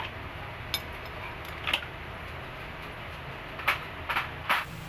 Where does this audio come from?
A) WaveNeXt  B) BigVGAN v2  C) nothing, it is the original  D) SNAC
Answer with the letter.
C